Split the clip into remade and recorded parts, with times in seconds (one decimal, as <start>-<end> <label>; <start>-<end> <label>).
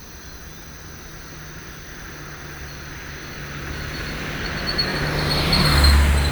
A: 0.0-6.3 recorded